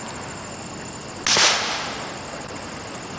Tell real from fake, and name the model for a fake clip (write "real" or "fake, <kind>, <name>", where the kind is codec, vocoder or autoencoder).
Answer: real